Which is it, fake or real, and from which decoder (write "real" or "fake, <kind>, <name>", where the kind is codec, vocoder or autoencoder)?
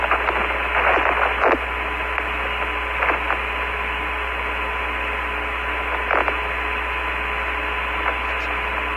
real